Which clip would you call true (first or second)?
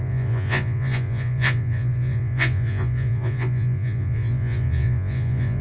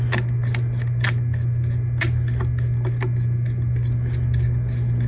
second